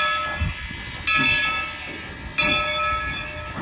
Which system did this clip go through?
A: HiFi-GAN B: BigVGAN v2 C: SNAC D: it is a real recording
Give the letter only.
D